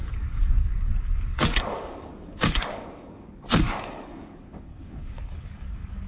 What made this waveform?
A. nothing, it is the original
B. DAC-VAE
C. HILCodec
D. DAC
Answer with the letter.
D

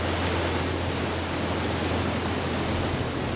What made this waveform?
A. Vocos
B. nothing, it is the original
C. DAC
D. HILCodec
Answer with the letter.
B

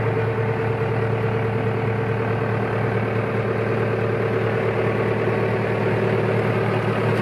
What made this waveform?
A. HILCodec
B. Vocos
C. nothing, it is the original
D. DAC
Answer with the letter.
C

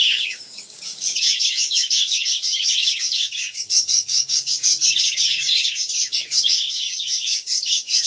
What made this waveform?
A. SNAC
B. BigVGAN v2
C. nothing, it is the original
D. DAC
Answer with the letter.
D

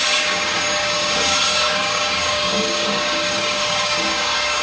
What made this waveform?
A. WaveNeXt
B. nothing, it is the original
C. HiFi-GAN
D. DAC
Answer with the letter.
D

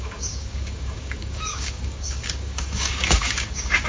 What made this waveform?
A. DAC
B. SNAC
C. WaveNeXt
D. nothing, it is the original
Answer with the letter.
A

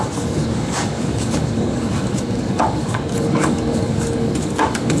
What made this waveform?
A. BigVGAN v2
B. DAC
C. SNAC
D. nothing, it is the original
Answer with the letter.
B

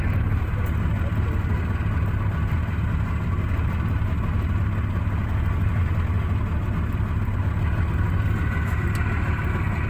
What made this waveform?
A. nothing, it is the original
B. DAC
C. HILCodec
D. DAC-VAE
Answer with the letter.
A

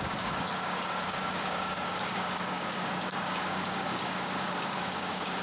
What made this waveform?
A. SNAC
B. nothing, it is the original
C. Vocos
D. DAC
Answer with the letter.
D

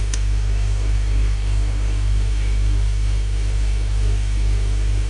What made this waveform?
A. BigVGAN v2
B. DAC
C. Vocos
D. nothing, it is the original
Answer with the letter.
B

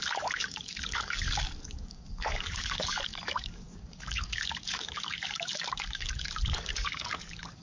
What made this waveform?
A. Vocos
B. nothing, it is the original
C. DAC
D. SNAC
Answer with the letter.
C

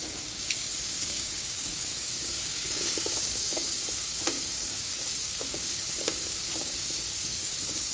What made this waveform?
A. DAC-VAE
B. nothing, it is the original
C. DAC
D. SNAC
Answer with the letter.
C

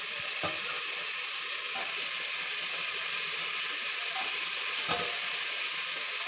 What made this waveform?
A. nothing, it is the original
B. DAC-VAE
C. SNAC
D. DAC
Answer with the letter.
A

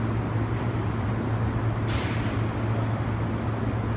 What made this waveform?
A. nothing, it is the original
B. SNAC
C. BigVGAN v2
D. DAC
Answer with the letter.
A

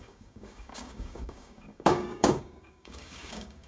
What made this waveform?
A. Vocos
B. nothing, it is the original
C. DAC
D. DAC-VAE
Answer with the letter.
C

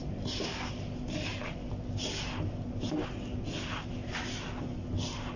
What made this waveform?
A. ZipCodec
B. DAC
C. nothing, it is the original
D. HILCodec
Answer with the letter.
C